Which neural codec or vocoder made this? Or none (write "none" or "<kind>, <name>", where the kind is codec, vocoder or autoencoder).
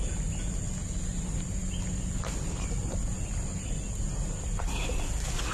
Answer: none